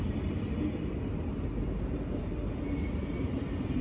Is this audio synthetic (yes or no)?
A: no